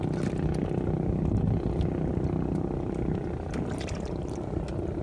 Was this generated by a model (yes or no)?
no